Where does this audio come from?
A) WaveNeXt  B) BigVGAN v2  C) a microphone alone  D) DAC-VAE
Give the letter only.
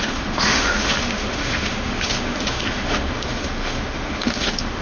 D